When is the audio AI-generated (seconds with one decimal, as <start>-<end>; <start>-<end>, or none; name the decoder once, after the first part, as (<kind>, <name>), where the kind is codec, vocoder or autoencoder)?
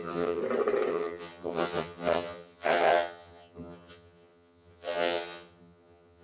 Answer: 0.0-0.4 (vocoder, HiFi-GAN); 0.9-6.2